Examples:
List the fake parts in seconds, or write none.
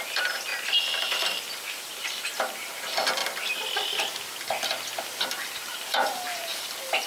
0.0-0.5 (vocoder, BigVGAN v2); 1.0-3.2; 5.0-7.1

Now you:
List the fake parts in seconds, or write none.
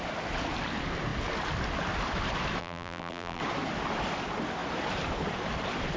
2.6-3.4 (vocoder, BigVGAN v2)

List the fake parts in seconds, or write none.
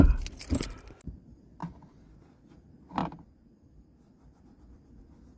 none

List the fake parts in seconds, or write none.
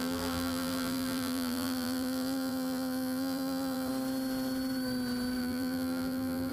0.0-3.9 (vocoder, BigVGAN v2); 5.4-6.5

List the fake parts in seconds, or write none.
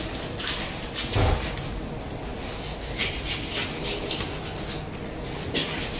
none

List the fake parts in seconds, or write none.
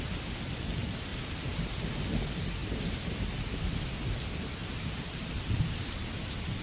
1.1-2.2 (vocoder, BigVGAN v2); 4.6-6.1